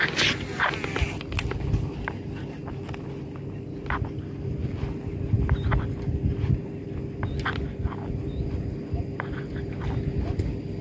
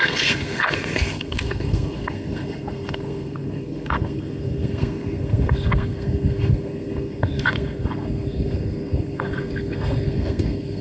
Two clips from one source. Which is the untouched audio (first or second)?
first